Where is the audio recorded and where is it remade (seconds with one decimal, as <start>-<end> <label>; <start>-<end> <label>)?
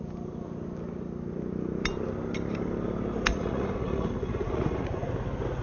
0.0-3.3 recorded; 3.3-5.1 remade; 5.1-5.6 recorded